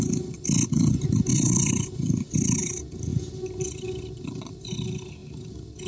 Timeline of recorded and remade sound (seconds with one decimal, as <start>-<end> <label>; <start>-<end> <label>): 0.0-5.9 recorded